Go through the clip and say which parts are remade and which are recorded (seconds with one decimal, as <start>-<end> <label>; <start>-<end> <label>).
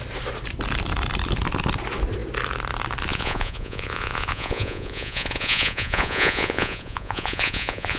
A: 0.0-3.1 recorded; 3.1-8.0 remade